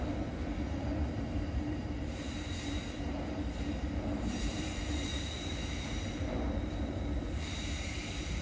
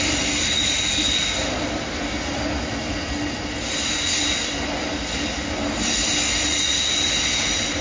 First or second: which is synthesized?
first